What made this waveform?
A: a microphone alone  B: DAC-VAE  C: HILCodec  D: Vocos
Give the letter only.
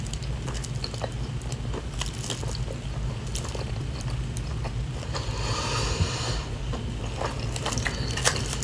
A